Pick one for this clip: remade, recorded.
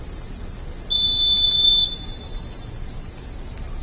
recorded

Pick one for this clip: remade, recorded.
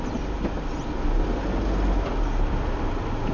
recorded